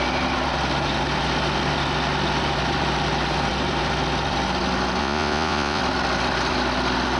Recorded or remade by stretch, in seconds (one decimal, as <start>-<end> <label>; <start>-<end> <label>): 0.0-5.0 recorded; 5.0-5.8 remade; 5.8-7.2 recorded